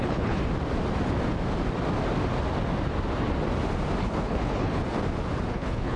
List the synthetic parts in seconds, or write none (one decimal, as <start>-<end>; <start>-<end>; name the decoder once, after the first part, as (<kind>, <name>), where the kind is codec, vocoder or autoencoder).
0.0-0.4 (codec, HILCodec); 4.0-4.8; 5.5-6.0